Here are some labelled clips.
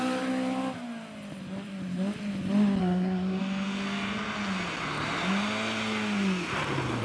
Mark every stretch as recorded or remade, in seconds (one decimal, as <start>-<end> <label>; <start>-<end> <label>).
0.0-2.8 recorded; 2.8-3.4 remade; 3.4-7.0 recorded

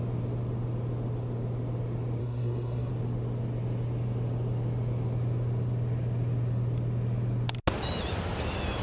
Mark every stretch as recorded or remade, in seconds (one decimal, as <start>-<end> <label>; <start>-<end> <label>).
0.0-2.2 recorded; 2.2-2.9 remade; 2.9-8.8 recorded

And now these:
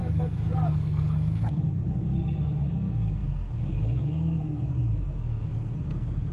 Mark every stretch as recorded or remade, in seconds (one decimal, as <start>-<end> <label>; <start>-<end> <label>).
0.0-6.3 remade

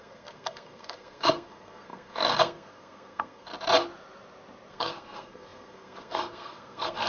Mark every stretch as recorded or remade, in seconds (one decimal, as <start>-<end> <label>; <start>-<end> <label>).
0.0-3.5 remade; 3.5-4.7 recorded; 4.7-7.1 remade

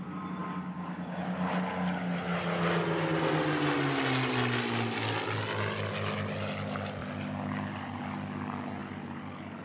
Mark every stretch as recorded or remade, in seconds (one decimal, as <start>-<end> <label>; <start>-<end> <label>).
0.0-9.6 recorded